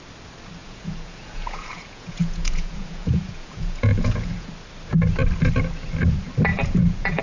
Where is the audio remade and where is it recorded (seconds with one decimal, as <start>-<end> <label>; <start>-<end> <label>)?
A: 0.0-0.6 recorded; 0.6-4.5 remade; 4.5-6.5 recorded; 6.5-7.2 remade

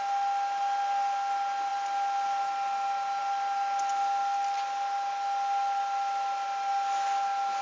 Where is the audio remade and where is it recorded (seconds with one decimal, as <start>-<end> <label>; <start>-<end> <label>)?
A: 0.0-7.6 recorded

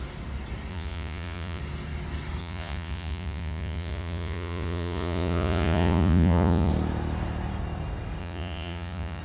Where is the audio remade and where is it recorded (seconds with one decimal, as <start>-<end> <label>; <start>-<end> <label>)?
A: 0.0-0.7 recorded; 0.7-1.6 remade; 1.6-2.4 recorded; 2.4-6.7 remade; 6.7-8.2 recorded; 8.2-9.2 remade

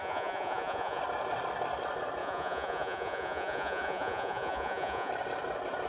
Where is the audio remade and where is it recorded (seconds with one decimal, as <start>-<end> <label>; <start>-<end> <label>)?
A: 0.0-1.0 remade; 1.0-2.2 recorded; 2.2-5.1 remade; 5.1-5.9 recorded

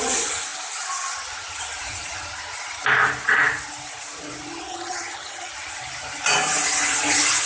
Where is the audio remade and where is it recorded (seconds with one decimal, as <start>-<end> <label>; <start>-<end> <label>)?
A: 0.0-4.7 recorded; 4.7-5.5 remade; 5.5-7.5 recorded

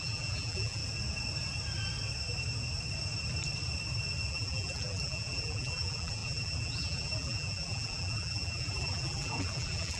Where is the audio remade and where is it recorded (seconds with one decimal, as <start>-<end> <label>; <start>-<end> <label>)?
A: 0.0-0.8 remade; 0.8-4.3 recorded; 4.3-10.0 remade

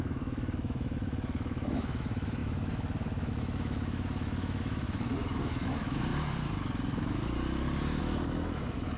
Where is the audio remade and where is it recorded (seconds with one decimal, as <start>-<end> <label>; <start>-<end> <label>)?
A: 0.0-6.1 remade; 6.1-8.0 recorded; 8.0-9.0 remade

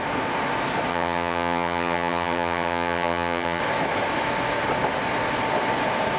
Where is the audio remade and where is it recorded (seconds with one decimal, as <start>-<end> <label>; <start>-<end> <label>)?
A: 0.0-0.9 recorded; 0.9-3.6 remade; 3.6-6.2 recorded